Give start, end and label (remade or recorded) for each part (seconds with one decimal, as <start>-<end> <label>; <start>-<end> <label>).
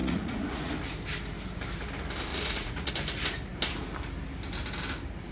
0.0-0.7 remade; 0.7-2.3 recorded; 2.3-2.9 remade; 2.9-5.3 recorded